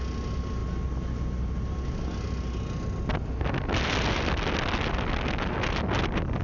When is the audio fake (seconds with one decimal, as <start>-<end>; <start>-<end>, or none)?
none